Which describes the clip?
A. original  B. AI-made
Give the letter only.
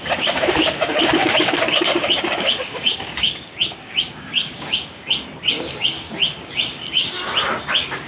B